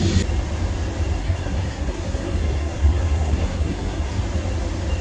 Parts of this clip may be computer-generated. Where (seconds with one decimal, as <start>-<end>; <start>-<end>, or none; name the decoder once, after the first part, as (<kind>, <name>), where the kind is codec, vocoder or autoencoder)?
1.2-4.2 (codec, SNAC)